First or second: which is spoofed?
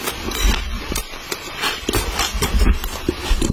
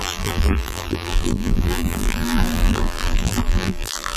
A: second